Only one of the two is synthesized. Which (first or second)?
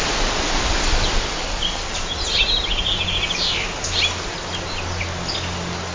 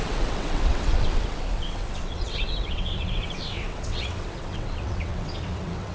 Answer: second